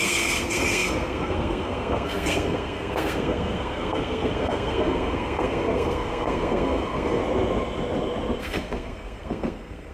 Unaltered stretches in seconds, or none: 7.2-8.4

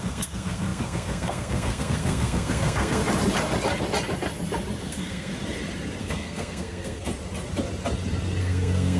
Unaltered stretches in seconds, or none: 3.0-4.8; 5.3-6.0; 7.1-8.4